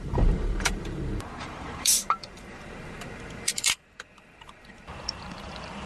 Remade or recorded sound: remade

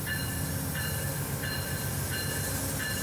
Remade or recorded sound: recorded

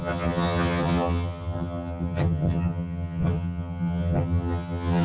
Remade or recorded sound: remade